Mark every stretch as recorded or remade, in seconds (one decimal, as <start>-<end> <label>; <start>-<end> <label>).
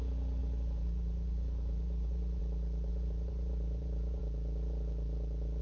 0.0-0.4 recorded; 0.4-2.4 remade; 2.4-2.9 recorded; 2.9-4.2 remade; 4.2-5.6 recorded